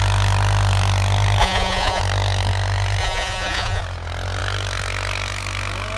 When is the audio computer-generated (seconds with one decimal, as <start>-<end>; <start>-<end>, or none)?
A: 1.4-2.0; 3.0-3.8